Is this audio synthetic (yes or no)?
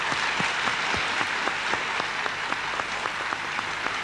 no